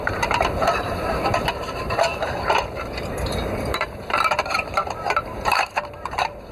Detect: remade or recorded remade